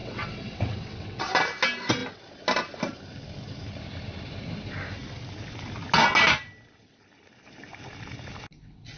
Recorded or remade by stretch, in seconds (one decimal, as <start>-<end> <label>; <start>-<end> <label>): 0.0-1.3 remade; 1.3-9.0 recorded